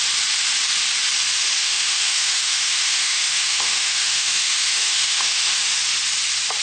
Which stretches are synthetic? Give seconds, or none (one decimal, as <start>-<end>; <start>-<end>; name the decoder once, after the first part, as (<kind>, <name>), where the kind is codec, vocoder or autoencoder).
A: 1.6-5.6 (autoencoder, DAC-VAE)